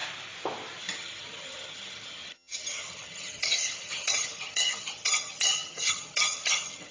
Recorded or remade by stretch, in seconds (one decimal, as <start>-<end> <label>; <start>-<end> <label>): 0.0-0.8 recorded; 0.8-6.9 remade